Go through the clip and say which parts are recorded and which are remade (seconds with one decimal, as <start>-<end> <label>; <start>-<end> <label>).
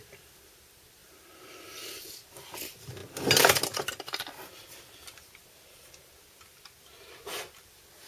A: 0.0-8.1 recorded